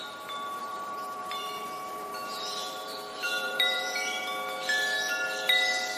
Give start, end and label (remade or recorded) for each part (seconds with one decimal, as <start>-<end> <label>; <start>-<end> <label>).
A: 0.0-0.6 recorded; 0.6-4.2 remade; 4.2-6.0 recorded